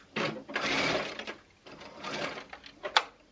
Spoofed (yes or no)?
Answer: no